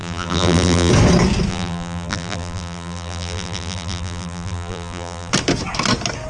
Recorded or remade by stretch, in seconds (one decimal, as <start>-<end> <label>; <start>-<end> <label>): 0.0-0.9 remade; 0.9-1.5 recorded; 1.5-5.3 remade; 5.3-6.3 recorded